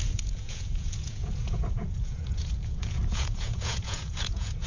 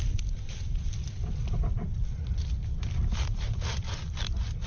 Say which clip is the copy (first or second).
first